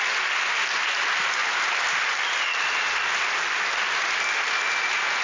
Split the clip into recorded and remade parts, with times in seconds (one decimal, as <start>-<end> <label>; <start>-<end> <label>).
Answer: 0.0-5.2 recorded